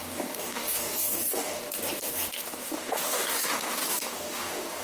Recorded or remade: remade